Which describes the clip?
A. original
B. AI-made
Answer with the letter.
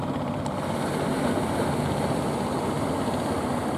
A